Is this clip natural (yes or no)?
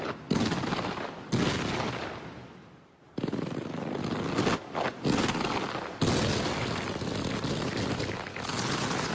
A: yes